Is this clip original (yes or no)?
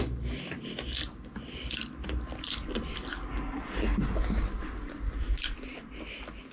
yes